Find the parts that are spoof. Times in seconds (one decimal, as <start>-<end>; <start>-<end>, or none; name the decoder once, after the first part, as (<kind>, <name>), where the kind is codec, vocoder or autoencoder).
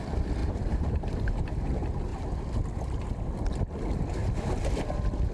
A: 0.4-1.3 (vocoder, BigVGAN v2)